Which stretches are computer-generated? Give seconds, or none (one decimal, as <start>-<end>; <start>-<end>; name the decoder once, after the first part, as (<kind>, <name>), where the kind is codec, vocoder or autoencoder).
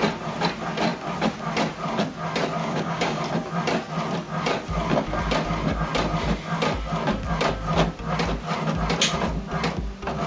2.6-3.2 (codec, DAC)